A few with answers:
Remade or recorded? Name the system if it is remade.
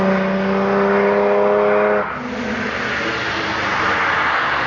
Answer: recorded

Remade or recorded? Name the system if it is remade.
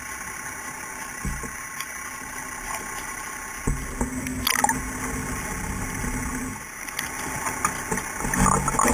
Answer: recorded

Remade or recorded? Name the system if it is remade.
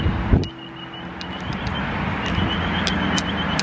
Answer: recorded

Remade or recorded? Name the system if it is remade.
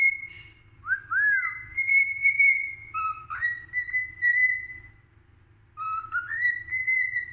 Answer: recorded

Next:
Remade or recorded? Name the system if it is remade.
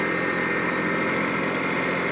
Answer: recorded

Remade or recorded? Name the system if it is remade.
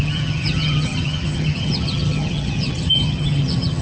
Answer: remade, vocoder, HiFi-GAN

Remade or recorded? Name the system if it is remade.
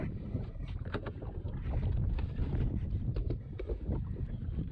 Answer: remade, vocoder, BigVGAN v2